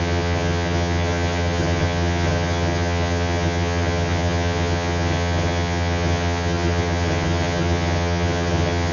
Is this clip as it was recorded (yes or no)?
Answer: no